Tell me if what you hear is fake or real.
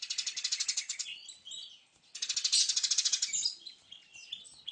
real